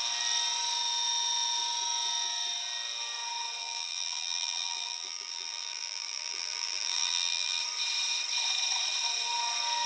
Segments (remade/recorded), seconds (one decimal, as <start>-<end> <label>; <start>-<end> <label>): 0.0-3.6 recorded; 3.6-7.6 remade; 7.6-9.9 recorded